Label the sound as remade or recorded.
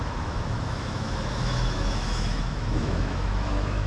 remade